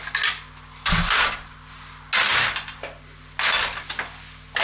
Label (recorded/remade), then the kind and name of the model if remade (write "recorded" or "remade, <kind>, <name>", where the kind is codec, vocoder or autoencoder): recorded